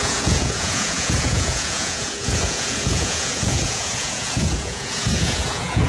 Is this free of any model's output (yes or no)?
no